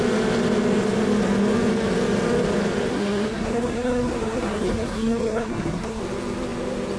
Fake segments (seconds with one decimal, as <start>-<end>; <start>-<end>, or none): 2.9-6.0